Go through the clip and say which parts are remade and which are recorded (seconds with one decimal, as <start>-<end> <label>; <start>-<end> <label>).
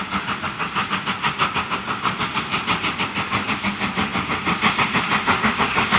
0.0-6.0 recorded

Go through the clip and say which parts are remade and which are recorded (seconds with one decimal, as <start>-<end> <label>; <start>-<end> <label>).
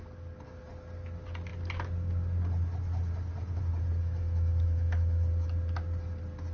0.0-4.0 recorded; 4.0-5.3 remade; 5.3-6.5 recorded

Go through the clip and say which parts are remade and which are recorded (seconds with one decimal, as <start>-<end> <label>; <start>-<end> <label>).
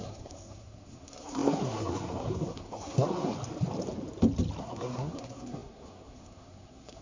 0.0-3.3 remade; 3.3-4.6 recorded; 4.6-7.0 remade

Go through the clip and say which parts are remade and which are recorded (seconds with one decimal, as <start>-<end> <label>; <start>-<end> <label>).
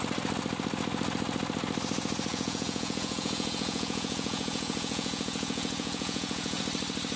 0.0-2.3 recorded; 2.3-6.6 remade; 6.6-7.2 recorded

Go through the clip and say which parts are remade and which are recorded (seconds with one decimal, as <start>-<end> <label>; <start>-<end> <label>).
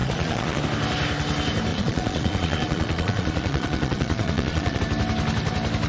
0.0-0.6 remade; 0.6-1.7 recorded; 1.7-4.8 remade; 4.8-5.9 recorded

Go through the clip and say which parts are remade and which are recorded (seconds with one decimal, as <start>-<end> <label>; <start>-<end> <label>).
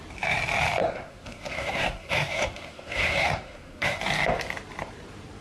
0.0-0.8 recorded; 0.8-4.0 remade; 4.0-5.4 recorded